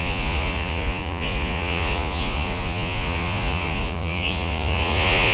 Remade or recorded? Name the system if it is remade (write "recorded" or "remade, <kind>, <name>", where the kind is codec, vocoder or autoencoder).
remade, vocoder, Vocos